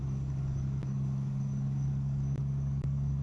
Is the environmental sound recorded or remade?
remade